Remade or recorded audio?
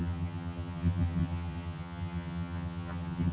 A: remade